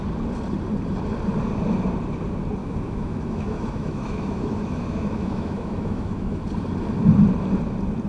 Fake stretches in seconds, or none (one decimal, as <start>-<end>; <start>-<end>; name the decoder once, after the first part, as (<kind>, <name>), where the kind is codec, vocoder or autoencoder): 2.6-6.4 (autoencoder, DAC-VAE)